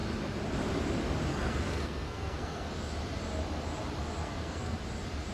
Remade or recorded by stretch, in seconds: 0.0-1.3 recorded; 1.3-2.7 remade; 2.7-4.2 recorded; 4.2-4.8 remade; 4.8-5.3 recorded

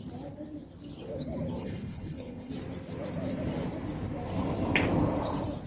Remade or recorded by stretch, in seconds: 0.0-1.6 recorded; 1.6-2.5 remade; 2.5-5.7 recorded

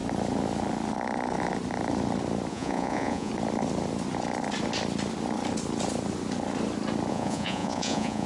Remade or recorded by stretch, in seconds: 0.0-2.5 recorded; 2.5-3.3 remade; 3.3-7.1 recorded; 7.1-8.3 remade

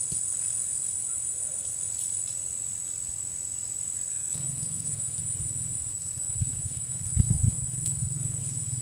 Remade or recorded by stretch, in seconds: 0.0-4.1 recorded; 4.1-5.2 remade; 5.2-5.9 recorded; 5.9-8.4 remade; 8.4-8.8 recorded

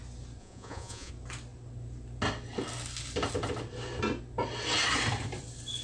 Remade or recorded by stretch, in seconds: 0.0-0.4 recorded; 0.4-1.1 remade; 1.1-5.8 recorded

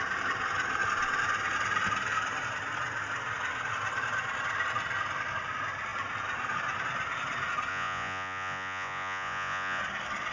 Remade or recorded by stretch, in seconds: 0.0-7.7 recorded; 7.7-9.8 remade; 9.8-10.3 recorded